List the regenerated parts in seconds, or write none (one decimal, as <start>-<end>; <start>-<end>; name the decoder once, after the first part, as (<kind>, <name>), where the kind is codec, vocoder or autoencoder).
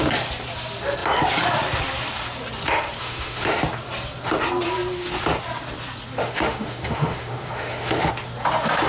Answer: 3.0-3.6 (autoencoder, DAC-VAE); 6.2-8.1